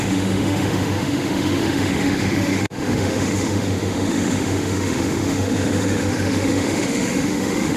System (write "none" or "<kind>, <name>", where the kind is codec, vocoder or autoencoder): autoencoder, DAC-VAE